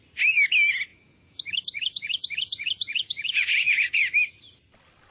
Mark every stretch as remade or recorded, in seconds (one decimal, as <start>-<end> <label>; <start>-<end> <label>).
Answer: 0.0-0.9 recorded; 0.9-4.0 remade; 4.0-5.1 recorded